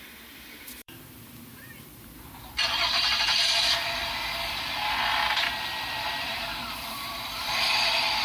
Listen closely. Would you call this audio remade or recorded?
remade